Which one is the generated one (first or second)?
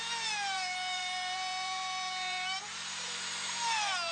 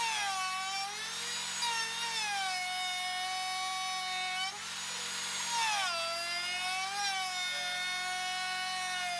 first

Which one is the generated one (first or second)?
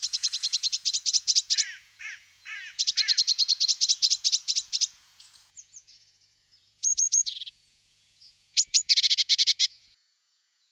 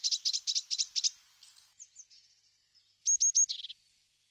first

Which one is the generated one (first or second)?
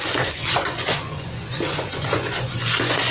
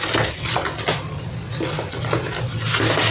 first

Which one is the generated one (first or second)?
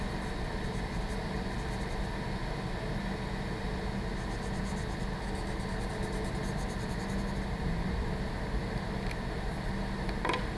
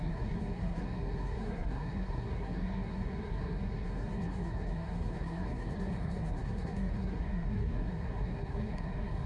second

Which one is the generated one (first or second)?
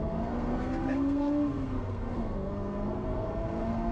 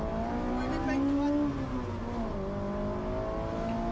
first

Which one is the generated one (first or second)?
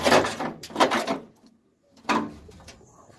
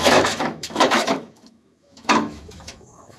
second